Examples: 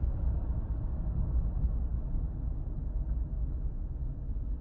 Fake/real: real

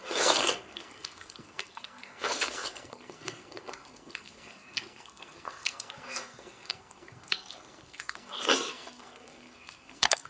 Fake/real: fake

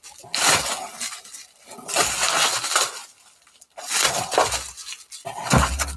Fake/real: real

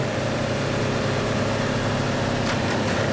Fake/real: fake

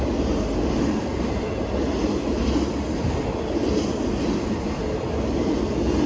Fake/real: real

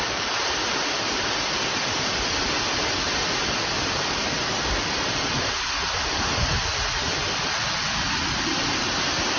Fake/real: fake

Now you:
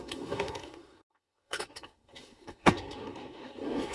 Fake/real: fake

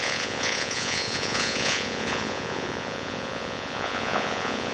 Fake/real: fake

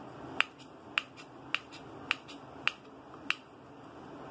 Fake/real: real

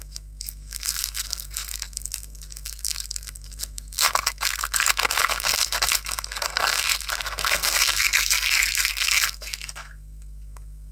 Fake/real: fake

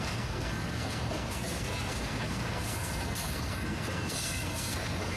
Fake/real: fake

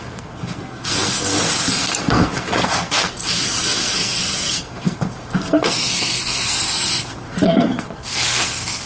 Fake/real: fake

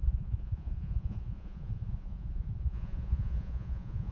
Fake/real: fake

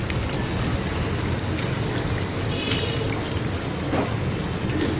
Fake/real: real